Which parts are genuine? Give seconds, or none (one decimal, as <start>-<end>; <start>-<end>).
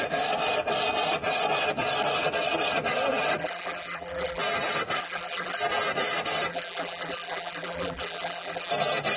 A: 0.0-3.4; 4.4-5.0; 5.6-6.5; 8.7-9.2